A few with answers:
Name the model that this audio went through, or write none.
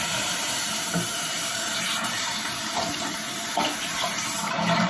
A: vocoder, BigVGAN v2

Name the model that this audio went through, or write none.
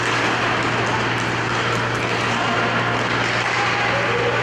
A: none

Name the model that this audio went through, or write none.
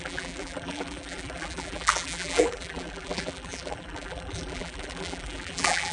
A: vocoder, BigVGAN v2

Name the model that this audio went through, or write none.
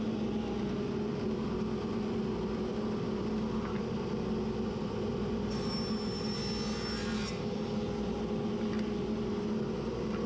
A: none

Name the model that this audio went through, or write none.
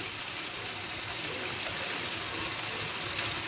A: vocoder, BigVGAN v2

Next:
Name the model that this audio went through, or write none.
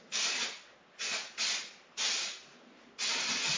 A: none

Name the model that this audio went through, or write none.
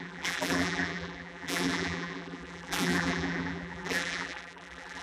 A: vocoder, BigVGAN v2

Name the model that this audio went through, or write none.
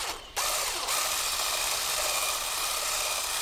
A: vocoder, BigVGAN v2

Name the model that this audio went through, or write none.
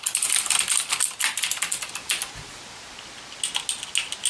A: none